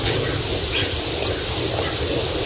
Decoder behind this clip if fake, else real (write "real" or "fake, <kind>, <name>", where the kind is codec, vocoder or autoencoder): real